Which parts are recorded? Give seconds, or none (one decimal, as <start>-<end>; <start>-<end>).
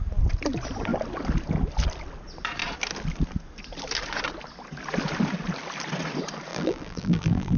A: 0.0-6.5